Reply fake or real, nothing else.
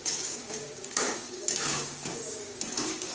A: fake